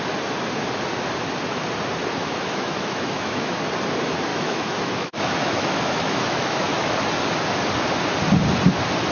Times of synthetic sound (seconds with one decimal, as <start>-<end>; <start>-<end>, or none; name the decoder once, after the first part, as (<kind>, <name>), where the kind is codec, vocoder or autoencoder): 2.2-3.6 (autoencoder, DAC-VAE); 4.3-6.9